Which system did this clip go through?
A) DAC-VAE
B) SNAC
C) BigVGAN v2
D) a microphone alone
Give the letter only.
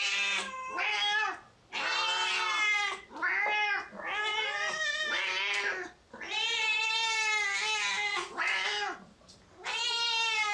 D